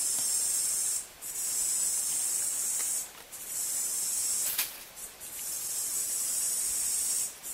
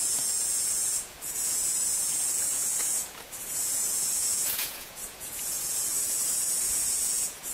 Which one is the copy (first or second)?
second